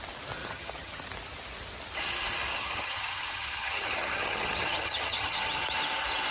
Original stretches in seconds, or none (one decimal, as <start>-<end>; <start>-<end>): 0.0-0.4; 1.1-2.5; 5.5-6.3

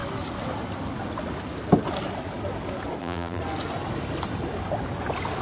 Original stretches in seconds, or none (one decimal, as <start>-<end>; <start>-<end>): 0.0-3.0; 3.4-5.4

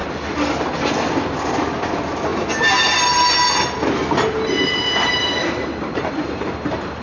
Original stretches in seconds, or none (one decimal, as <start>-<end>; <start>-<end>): 0.0-0.9; 2.3-5.4